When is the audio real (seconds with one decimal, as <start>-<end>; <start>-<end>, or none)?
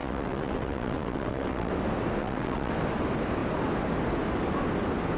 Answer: 1.7-2.2; 2.7-5.2